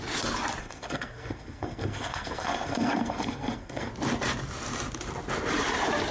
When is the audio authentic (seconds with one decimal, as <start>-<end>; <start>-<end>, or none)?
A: 0.0-0.6; 3.9-6.1